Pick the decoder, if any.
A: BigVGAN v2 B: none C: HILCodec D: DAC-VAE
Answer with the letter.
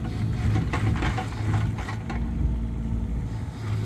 B